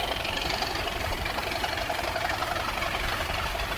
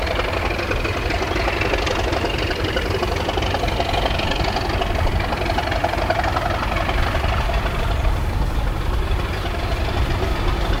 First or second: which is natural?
second